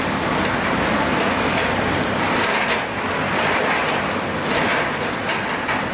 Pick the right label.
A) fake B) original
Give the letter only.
B